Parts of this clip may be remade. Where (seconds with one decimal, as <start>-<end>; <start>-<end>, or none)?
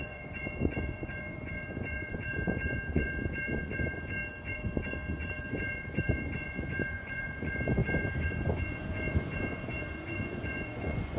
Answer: 0.0-11.2